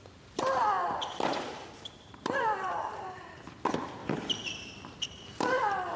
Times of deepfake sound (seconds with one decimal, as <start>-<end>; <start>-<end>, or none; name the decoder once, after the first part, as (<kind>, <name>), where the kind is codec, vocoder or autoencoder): 0.8-3.3 (vocoder, BigVGAN v2); 4.0-5.4